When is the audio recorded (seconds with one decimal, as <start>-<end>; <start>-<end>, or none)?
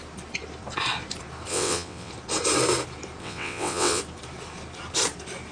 0.0-1.5; 2.1-3.2; 4.0-5.5